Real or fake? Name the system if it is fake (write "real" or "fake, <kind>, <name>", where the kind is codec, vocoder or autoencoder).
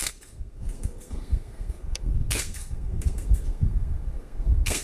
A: fake, codec, SNAC